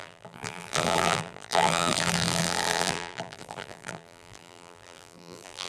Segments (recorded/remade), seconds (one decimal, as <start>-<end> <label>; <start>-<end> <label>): 0.0-5.7 remade

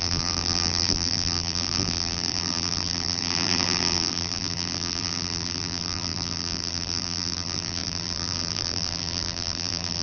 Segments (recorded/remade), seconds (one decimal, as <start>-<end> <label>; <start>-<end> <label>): 0.0-10.0 remade

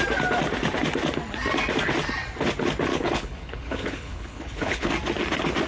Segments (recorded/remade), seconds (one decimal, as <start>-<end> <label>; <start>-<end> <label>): 0.0-2.9 recorded; 2.9-4.9 remade; 4.9-5.7 recorded

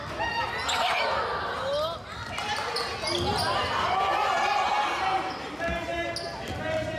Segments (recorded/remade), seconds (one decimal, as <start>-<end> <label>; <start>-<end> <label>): 0.0-7.0 recorded

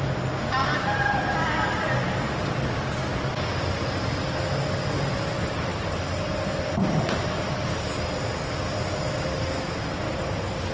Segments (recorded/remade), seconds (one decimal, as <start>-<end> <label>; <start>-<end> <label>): 0.0-0.6 recorded; 0.6-1.2 remade; 1.2-5.7 recorded; 5.7-6.7 remade; 6.7-10.7 recorded